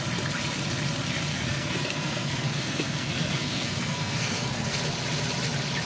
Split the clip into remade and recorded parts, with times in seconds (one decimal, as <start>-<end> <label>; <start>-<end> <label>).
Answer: 0.0-1.3 recorded; 1.3-4.8 remade; 4.8-5.9 recorded